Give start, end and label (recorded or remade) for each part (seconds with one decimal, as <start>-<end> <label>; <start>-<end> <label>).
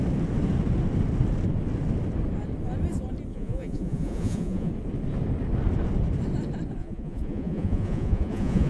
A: 0.0-3.3 recorded; 3.3-4.7 remade; 4.7-6.8 recorded; 6.8-8.7 remade